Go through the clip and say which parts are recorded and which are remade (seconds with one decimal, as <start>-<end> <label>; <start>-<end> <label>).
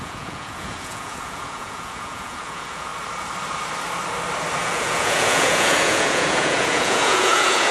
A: 0.0-2.9 remade; 2.9-4.6 recorded; 4.6-7.7 remade